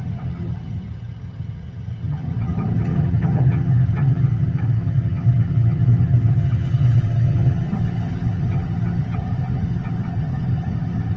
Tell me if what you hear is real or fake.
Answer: fake